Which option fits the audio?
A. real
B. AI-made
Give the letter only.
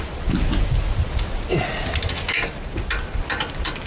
A